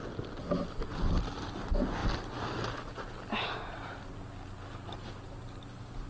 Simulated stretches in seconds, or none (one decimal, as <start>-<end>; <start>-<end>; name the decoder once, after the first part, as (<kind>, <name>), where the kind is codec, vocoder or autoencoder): none

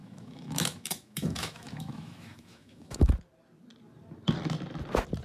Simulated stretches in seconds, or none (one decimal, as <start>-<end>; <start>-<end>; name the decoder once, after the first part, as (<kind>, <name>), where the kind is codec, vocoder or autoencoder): 0.0-3.1 (autoencoder, DAC-VAE)